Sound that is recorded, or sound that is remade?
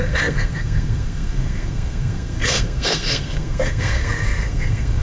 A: remade